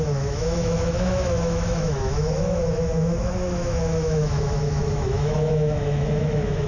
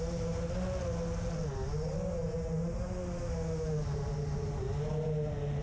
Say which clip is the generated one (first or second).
first